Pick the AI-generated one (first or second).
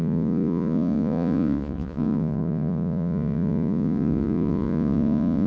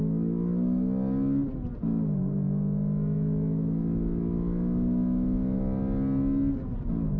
first